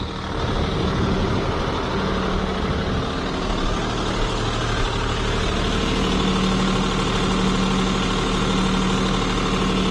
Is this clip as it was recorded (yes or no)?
yes